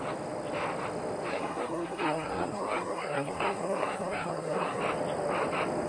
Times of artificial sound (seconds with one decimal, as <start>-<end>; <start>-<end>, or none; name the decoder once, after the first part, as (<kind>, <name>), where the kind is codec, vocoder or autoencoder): 1.3-4.8 (codec, SNAC)